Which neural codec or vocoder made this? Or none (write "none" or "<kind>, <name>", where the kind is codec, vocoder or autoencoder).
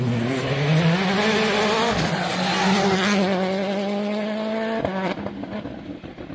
none